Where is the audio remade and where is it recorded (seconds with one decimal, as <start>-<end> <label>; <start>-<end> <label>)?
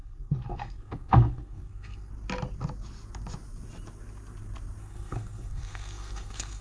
0.0-2.1 remade; 2.1-4.8 recorded; 4.8-6.6 remade